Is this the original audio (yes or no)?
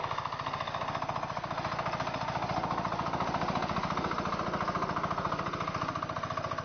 yes